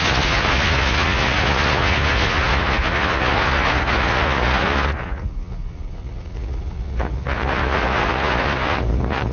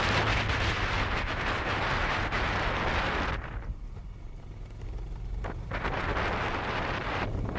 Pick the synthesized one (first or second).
first